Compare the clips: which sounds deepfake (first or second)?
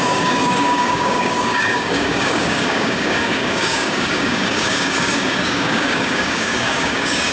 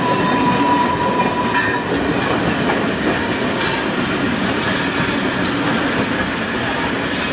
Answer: first